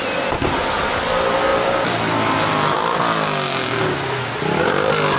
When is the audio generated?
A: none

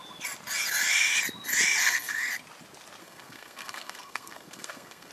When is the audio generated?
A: 1.8-2.3 (codec, SNAC); 3.0-5.1

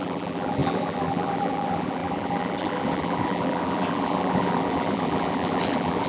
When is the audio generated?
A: 0.0-6.1 (vocoder, BigVGAN v2)

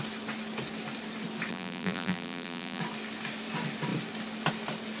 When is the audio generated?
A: 1.5-2.8 (vocoder, BigVGAN v2)

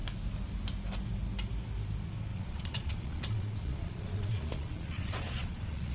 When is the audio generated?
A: 2.3-5.9 (vocoder, Vocos)

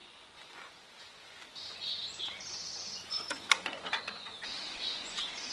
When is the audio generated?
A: 0.0-5.5 (vocoder, Vocos)

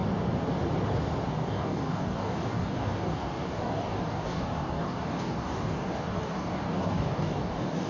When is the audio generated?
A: 1.3-7.9 (codec, DAC)

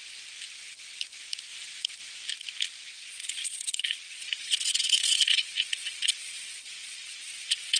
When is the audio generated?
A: 3.0-7.8 (vocoder, Vocos)